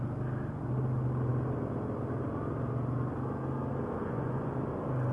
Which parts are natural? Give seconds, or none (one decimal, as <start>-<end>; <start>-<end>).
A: 0.0-4.0; 4.5-5.1